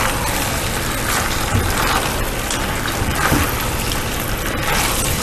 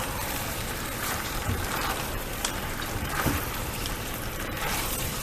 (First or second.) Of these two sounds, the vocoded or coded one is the second